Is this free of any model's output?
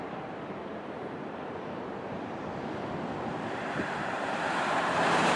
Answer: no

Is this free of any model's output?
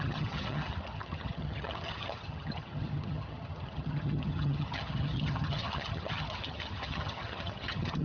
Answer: no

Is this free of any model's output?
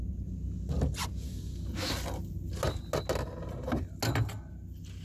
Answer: yes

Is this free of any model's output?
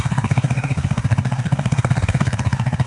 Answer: no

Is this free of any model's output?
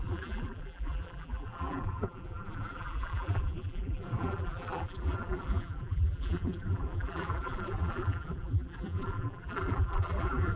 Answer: no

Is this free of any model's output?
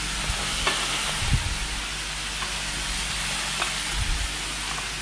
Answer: yes